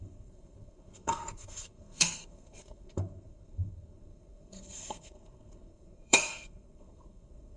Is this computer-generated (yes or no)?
yes